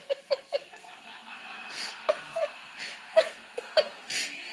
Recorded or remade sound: remade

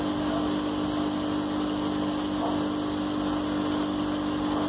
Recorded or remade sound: recorded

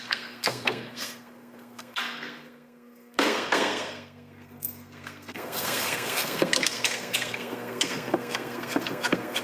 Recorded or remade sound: remade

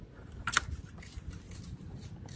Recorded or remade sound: recorded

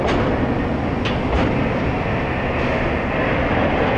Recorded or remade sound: recorded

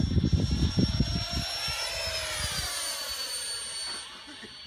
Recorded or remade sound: recorded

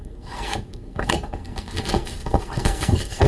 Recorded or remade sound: remade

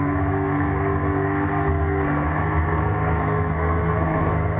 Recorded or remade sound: remade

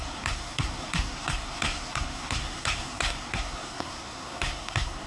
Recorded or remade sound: remade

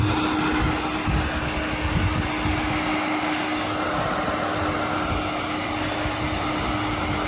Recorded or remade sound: recorded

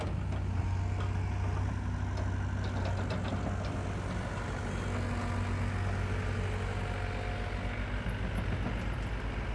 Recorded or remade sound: recorded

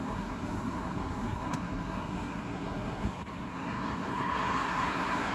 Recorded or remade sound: remade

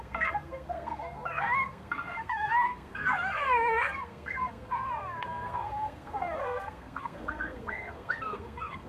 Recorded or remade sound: remade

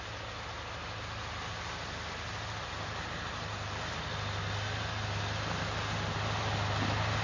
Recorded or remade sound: recorded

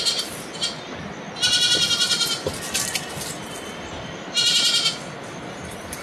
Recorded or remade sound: recorded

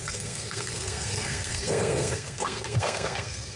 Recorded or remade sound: remade